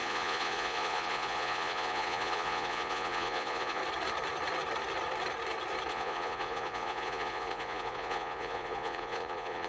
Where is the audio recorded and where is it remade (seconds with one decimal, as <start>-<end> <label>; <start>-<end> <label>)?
0.0-3.8 remade; 3.8-5.9 recorded; 5.9-9.7 remade